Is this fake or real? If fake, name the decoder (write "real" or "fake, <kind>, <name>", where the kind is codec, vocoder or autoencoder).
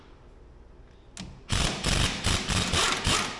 real